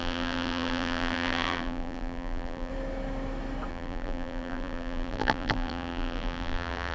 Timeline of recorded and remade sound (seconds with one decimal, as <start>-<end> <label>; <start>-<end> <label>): 0.0-2.7 remade; 2.7-3.7 recorded; 3.7-6.9 remade